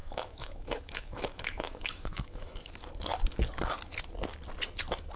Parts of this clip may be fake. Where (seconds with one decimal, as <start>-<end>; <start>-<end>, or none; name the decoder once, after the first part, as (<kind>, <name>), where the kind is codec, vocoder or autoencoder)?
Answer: 0.0-2.7 (autoencoder, DAC-VAE)